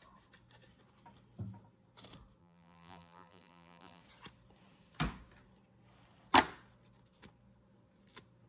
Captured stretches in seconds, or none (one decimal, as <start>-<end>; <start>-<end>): 0.0-2.4; 4.0-8.5